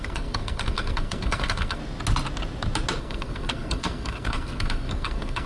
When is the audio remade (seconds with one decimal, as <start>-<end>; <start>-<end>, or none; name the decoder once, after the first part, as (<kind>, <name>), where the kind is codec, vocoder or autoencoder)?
0.0-1.8 (codec, SNAC); 3.0-5.5